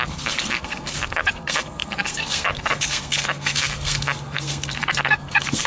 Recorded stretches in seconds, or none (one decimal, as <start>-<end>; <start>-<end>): none